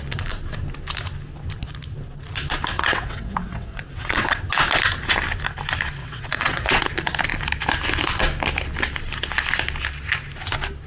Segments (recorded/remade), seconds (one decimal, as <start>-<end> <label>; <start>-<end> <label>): 0.0-2.7 recorded; 2.7-4.4 remade; 4.4-6.0 recorded; 6.0-6.8 remade; 6.8-10.9 recorded